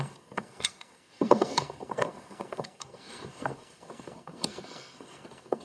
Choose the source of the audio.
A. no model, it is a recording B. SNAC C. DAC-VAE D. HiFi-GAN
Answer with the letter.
B